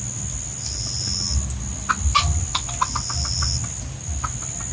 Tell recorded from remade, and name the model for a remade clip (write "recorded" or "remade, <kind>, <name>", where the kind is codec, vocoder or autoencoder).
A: recorded